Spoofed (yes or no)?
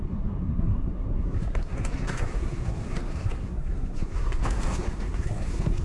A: yes